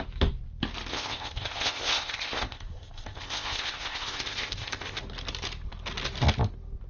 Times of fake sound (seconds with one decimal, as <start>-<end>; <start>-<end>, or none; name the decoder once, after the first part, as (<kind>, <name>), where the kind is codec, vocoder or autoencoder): 0.9-5.0 (codec, ZipCodec)